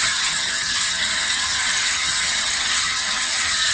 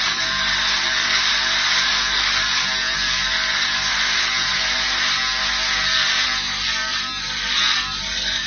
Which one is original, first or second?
second